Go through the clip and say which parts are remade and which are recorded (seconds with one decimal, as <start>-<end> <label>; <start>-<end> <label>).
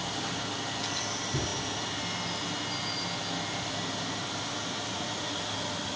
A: 0.0-4.9 recorded; 4.9-5.4 remade; 5.4-6.0 recorded